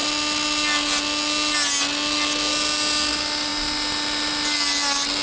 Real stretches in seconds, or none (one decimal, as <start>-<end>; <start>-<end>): 0.0-5.2